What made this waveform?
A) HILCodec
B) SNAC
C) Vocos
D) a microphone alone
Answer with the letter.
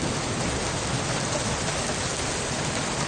D